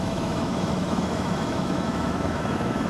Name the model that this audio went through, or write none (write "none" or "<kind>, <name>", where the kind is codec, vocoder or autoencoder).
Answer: autoencoder, DAC-VAE